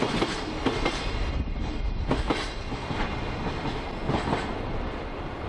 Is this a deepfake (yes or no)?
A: no